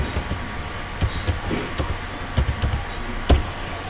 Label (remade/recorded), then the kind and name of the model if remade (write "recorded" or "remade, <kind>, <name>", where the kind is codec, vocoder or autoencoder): recorded